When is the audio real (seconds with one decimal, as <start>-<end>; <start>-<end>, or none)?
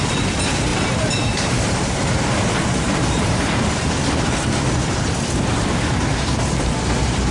0.0-0.7; 3.7-7.3